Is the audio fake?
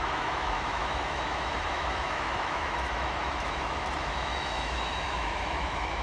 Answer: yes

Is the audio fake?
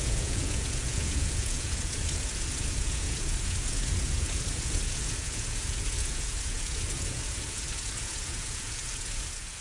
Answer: yes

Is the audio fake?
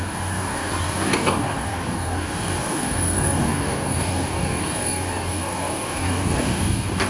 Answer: yes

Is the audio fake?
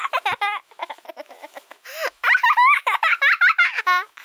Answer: yes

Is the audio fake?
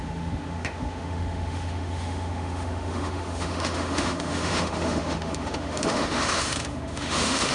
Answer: yes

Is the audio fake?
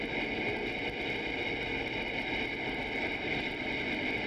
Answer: no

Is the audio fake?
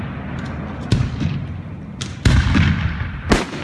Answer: no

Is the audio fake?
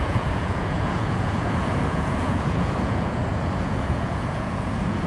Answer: yes